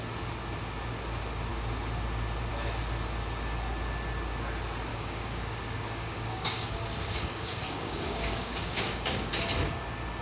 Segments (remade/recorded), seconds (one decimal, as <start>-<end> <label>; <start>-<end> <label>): 0.0-4.9 recorded; 4.9-9.3 remade; 9.3-10.2 recorded